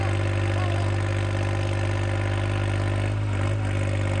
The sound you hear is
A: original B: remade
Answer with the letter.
A